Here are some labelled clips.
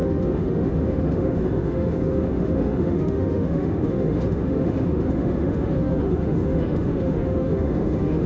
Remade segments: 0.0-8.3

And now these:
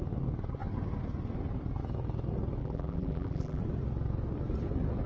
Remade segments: 2.6-3.6

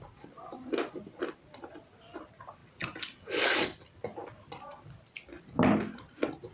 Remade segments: none

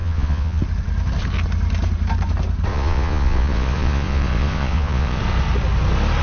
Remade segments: 0.0-0.6; 2.7-5.2

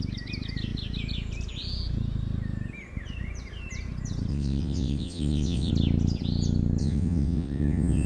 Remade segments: 4.3-5.7; 6.8-8.1

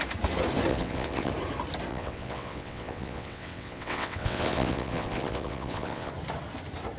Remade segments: 0.7-1.3; 1.9-6.1